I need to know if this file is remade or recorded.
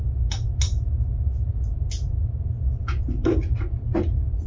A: recorded